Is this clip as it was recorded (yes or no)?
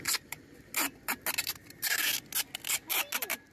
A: yes